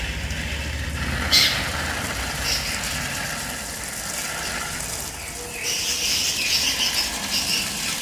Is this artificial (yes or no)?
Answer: no